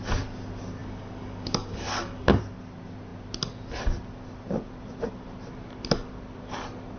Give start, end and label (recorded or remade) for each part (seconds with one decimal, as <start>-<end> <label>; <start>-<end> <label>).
0.0-0.8 recorded; 0.8-2.4 remade; 2.4-7.0 recorded